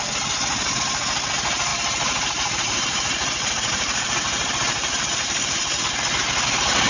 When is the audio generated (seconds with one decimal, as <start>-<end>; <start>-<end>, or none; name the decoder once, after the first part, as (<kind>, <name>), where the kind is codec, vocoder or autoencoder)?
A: 1.7-5.8 (vocoder, BigVGAN v2)